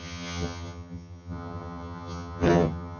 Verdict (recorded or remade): remade